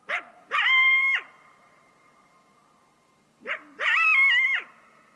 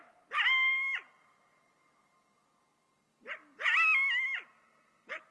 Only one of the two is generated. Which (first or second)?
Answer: first